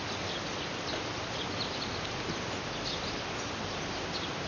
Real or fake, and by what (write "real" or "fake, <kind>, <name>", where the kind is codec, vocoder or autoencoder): real